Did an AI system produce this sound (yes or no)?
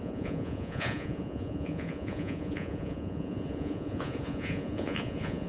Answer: yes